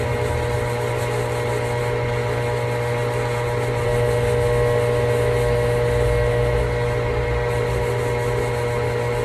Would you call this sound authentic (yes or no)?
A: yes